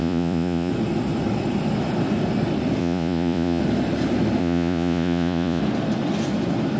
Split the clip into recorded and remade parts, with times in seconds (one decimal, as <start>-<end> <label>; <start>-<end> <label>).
0.0-0.7 remade; 0.7-2.8 recorded; 2.8-3.6 remade; 3.6-4.4 recorded; 4.4-5.6 remade; 5.6-6.8 recorded